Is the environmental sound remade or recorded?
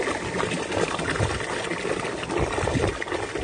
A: recorded